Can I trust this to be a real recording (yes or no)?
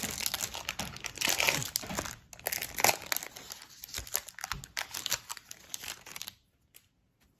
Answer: yes